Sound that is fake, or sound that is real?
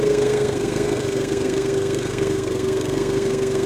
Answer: fake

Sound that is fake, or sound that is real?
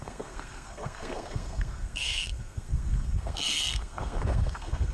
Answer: fake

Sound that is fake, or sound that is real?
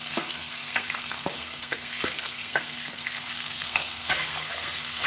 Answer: fake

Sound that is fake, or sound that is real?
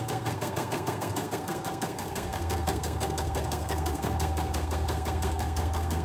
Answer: fake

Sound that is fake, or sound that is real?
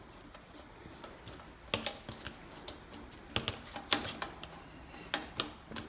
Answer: real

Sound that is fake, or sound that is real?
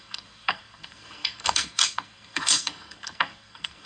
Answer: fake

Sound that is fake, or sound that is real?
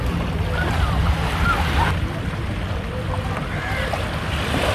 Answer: real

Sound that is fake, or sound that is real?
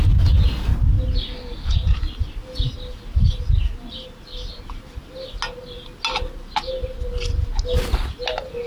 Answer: real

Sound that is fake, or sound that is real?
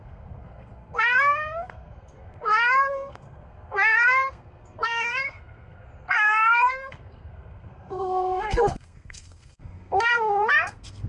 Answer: fake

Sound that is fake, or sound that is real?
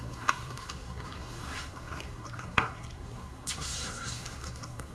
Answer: fake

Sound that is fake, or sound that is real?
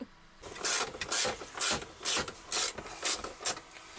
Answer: real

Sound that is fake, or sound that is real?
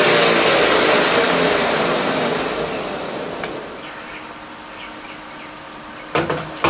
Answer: real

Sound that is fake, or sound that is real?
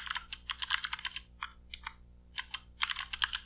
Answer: real